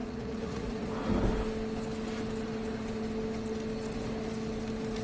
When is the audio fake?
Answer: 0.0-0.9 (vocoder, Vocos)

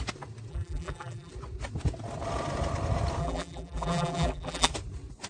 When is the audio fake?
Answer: 0.5-1.3 (vocoder, BigVGAN v2); 3.2-4.7

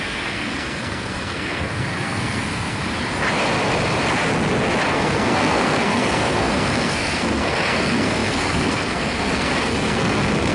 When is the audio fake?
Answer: 0.0-2.8 (codec, SNAC); 4.9-10.5

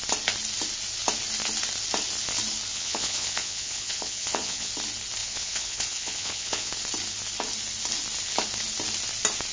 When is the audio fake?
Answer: 2.7-4.7 (vocoder, Vocos); 5.2-6.7